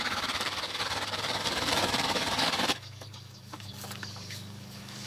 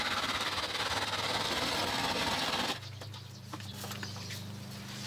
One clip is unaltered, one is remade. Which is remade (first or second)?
first